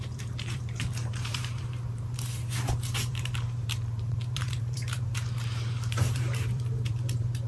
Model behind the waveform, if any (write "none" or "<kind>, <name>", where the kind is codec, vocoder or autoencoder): vocoder, BigVGAN v2